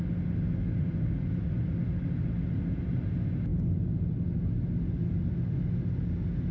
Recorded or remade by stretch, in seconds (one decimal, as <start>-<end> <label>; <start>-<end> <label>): 0.0-0.6 recorded; 0.6-1.1 remade; 1.1-6.5 recorded